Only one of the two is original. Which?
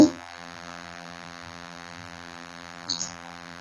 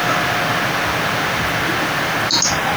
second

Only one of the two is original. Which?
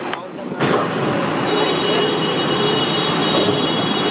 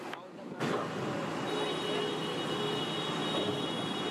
second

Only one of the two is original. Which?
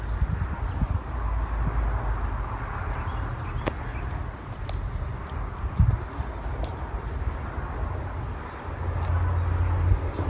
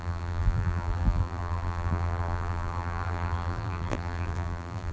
first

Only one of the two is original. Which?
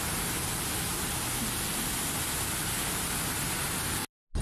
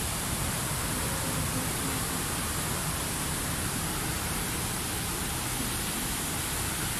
first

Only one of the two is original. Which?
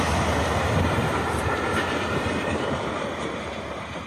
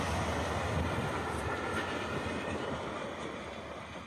second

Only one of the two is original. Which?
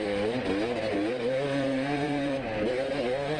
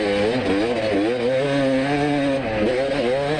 second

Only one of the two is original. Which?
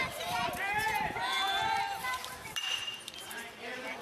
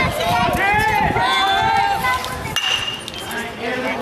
second